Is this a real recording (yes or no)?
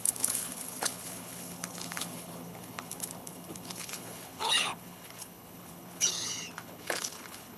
no